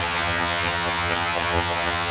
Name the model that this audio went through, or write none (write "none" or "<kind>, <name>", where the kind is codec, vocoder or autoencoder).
vocoder, HiFi-GAN